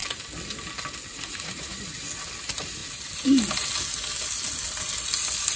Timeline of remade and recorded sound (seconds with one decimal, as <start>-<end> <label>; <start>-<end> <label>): 0.0-1.1 recorded; 1.1-1.8 remade; 1.8-5.6 recorded